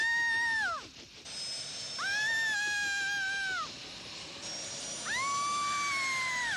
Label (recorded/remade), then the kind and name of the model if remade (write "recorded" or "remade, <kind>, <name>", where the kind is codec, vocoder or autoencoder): recorded